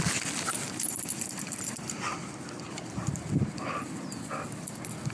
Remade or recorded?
remade